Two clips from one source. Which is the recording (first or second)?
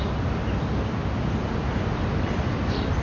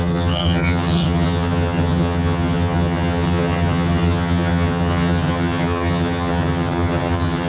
first